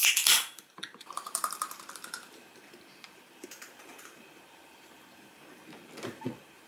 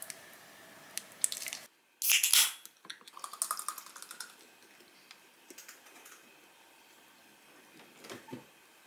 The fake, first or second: first